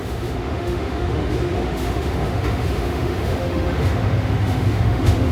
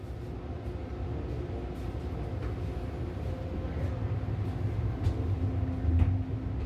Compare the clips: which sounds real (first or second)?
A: second